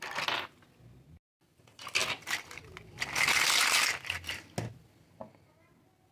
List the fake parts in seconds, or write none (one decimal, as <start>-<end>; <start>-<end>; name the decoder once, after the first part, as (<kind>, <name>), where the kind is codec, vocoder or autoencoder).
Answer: none